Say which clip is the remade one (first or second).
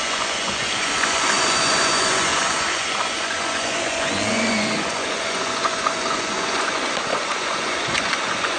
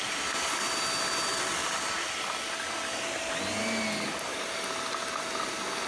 first